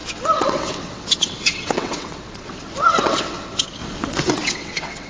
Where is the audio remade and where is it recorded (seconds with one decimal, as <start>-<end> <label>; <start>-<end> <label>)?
0.0-5.1 remade